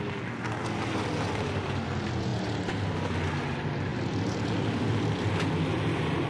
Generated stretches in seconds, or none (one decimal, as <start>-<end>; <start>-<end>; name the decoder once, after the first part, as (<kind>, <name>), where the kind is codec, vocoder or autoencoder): none